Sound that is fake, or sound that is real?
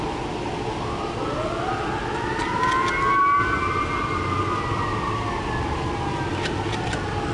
real